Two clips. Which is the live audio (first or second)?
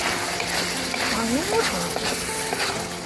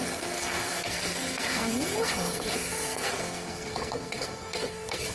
first